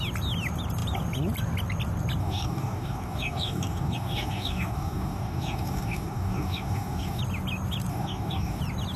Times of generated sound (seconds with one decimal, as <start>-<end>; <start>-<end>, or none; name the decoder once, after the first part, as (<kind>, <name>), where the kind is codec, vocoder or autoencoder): 2.2-7.2 (codec, DAC); 7.9-8.6